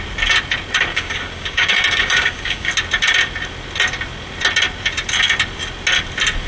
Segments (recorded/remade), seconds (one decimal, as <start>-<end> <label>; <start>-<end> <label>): 0.0-0.9 recorded; 0.9-2.7 remade; 2.7-6.5 recorded